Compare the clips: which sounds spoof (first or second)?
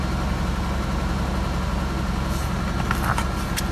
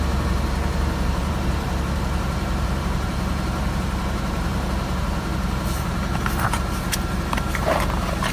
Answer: second